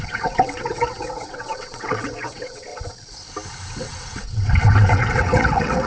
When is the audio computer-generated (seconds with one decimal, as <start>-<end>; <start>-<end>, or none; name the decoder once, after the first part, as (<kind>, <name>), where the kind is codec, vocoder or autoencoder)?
0.0-2.7 (vocoder, WaveNeXt); 3.7-5.9